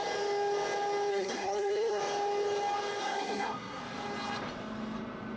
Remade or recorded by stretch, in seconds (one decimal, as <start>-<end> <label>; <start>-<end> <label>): 0.0-1.1 recorded; 1.1-2.0 remade; 2.0-3.0 recorded; 3.0-3.8 remade; 3.8-5.4 recorded